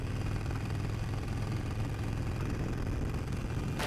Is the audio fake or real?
real